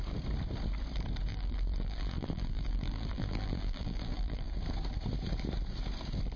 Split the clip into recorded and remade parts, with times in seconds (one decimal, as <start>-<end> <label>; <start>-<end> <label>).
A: 0.0-1.3 recorded; 1.3-4.5 remade; 4.5-6.4 recorded